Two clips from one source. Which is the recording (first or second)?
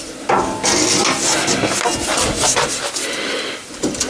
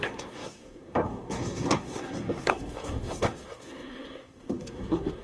first